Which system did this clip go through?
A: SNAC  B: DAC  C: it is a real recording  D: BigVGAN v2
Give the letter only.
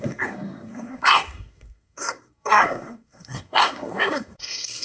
A